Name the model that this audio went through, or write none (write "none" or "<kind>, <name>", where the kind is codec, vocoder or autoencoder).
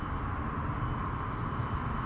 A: none